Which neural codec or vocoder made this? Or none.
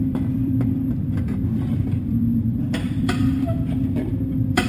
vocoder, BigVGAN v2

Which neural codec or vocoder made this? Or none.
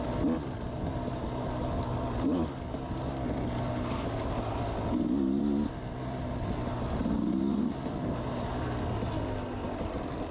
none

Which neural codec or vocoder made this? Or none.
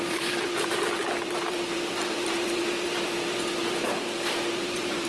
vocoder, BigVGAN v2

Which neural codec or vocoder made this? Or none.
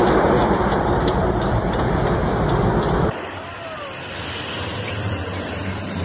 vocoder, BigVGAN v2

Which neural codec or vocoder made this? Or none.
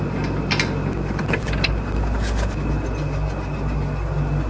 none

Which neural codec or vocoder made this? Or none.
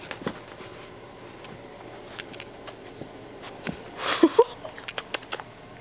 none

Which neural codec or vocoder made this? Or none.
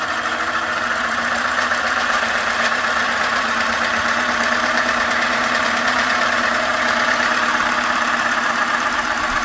vocoder, BigVGAN v2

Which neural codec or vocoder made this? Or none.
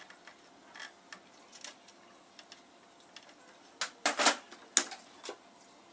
none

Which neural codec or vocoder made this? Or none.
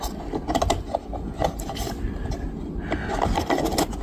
none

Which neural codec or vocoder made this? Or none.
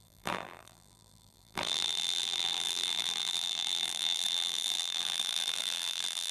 vocoder, BigVGAN v2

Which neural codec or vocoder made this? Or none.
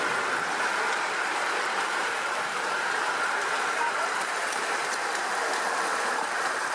vocoder, BigVGAN v2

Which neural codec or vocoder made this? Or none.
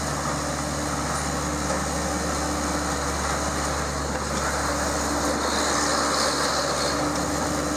none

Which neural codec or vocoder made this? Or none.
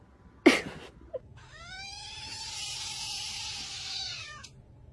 none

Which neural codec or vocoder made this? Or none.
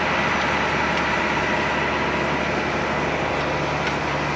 none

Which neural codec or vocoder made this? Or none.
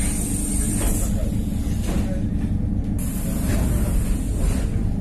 none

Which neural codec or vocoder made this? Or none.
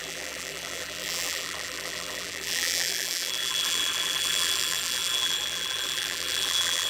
vocoder, BigVGAN v2